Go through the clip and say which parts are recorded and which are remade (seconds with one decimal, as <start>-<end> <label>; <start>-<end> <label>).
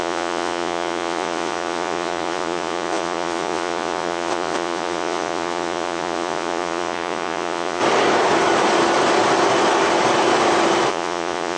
0.0-7.8 remade; 7.8-10.9 recorded; 10.9-11.6 remade